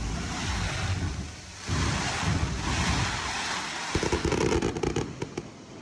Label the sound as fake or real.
real